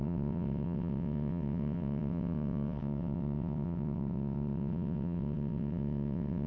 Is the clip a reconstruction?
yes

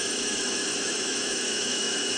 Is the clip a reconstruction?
yes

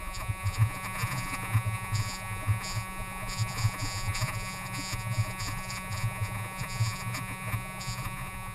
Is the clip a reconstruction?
yes